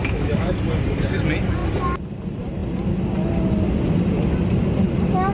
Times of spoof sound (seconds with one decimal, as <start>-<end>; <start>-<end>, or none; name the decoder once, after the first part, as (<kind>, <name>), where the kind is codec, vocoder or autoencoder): 0.0-0.5 (autoencoder, DAC-VAE)

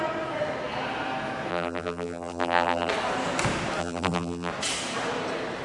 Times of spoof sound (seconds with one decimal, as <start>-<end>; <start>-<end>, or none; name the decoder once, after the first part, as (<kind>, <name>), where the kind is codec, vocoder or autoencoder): 1.5-2.9 (vocoder, BigVGAN v2); 3.8-4.5

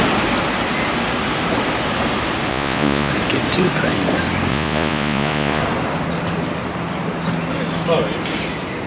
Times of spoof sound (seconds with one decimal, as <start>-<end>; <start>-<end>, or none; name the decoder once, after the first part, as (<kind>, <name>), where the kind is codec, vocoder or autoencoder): 2.5-3.1 (vocoder, Vocos); 4.5-5.6

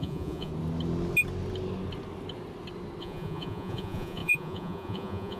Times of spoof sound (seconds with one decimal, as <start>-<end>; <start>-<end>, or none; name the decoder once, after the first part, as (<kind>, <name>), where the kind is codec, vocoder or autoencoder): 0.0-0.5 (vocoder, Vocos); 3.0-5.4

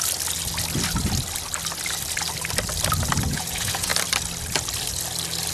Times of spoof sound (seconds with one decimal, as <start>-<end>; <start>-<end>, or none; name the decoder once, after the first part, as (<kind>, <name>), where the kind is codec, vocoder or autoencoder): 3.3-3.9 (vocoder, Vocos)

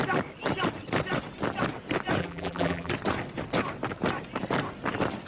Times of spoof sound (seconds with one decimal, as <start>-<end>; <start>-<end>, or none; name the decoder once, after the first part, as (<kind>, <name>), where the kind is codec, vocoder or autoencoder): 2.2-2.9 (vocoder, BigVGAN v2)